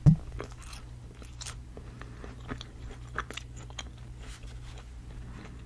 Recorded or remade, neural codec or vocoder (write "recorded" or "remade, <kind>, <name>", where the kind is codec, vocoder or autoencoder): recorded